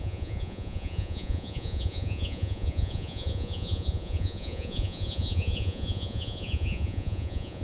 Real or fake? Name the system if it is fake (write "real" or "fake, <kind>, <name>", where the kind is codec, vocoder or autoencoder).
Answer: fake, vocoder, Vocos